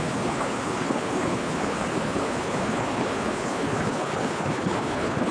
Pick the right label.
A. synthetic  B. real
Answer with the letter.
A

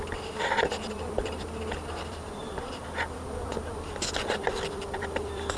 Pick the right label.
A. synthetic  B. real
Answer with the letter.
A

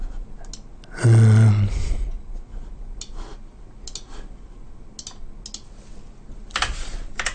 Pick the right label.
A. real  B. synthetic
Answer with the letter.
A